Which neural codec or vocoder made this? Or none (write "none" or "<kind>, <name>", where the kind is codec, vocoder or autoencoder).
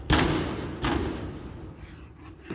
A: none